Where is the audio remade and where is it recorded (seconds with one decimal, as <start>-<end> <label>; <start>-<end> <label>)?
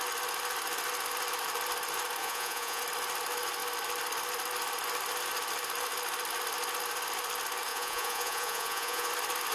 0.0-2.2 recorded; 2.2-2.8 remade; 2.8-7.7 recorded; 7.7-9.1 remade; 9.1-9.5 recorded